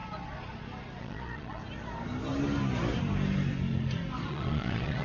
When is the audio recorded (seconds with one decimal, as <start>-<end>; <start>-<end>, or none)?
0.0-1.0; 1.6-4.3